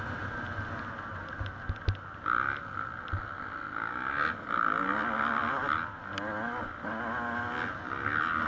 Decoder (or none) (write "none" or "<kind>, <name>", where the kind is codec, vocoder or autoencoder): none